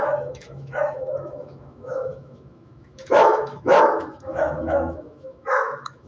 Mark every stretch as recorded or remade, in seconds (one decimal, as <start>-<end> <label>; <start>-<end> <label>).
0.0-6.1 remade